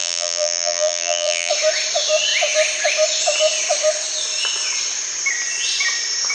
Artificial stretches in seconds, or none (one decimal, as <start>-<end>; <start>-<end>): 0.0-1.5